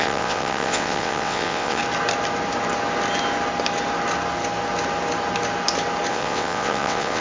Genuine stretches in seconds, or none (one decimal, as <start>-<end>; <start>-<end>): 1.8-6.1